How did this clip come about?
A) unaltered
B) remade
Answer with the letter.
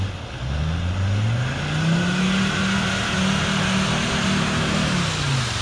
A